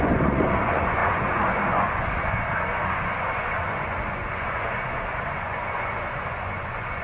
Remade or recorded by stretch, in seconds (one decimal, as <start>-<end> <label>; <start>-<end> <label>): 0.0-7.0 remade